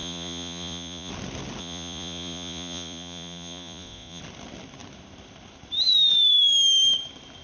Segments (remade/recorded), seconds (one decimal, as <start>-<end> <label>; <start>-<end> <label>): 0.0-1.1 remade; 1.1-1.6 recorded; 1.6-4.2 remade; 4.2-7.4 recorded